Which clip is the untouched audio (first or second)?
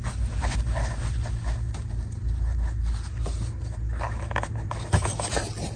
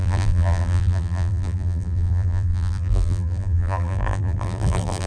first